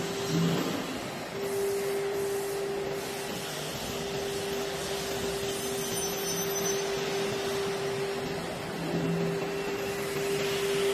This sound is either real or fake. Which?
real